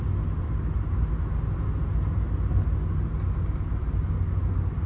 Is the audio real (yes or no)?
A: yes